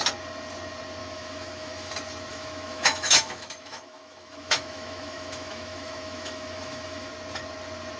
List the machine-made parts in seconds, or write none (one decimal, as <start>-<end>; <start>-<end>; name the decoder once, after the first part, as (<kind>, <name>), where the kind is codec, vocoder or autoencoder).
1.0-1.9 (autoencoder, DAC-VAE); 2.3-7.1